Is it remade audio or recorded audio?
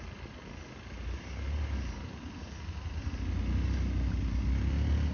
recorded